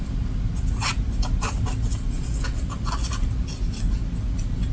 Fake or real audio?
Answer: real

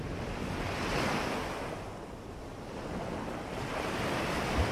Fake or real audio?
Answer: real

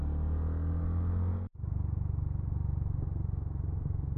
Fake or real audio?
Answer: real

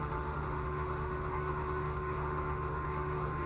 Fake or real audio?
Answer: fake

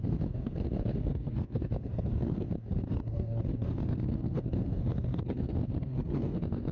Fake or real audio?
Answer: fake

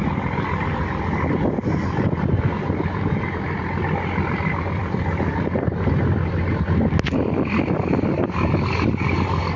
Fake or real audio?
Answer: real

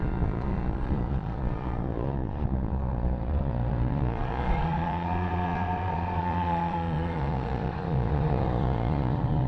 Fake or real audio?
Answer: fake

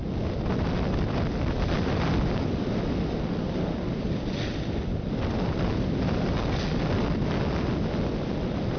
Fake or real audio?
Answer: real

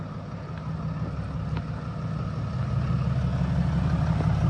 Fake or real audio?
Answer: real